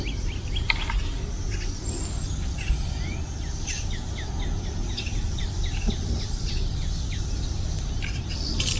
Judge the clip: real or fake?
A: real